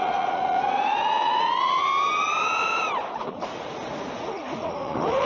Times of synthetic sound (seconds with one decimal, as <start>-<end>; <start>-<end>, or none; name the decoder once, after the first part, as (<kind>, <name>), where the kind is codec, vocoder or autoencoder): 0.0-1.9 (vocoder, Vocos); 3.1-5.3